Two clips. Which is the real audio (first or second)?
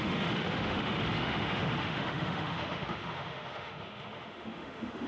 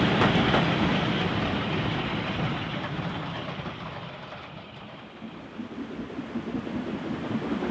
second